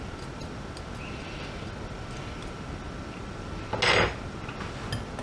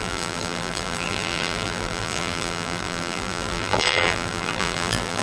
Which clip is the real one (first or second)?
first